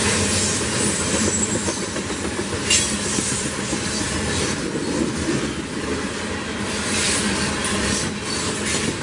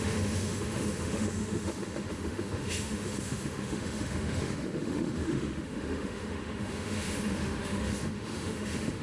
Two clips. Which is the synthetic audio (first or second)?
second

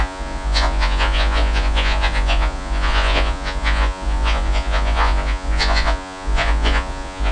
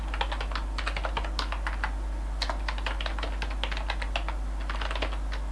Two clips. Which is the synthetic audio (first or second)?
first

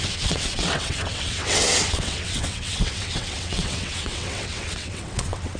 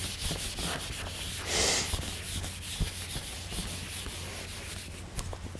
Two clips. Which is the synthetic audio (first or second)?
first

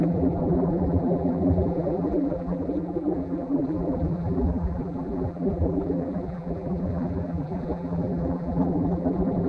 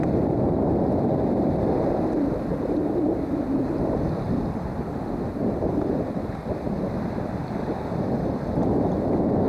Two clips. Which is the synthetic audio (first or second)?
first